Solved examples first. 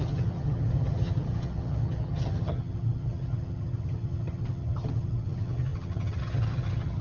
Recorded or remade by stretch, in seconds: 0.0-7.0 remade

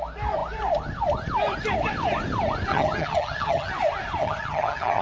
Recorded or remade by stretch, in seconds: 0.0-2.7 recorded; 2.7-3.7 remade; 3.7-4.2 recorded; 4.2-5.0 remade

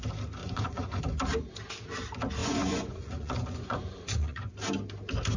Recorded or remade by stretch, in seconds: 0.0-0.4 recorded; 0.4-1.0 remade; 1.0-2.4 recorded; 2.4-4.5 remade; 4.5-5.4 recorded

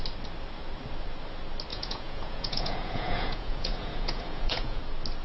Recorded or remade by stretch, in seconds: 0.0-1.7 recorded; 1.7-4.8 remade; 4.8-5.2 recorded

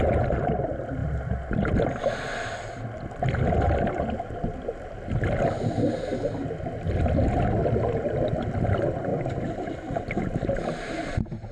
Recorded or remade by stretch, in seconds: 0.0-11.5 recorded

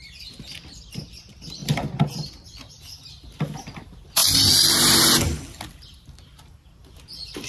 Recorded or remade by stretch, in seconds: 0.0-7.5 recorded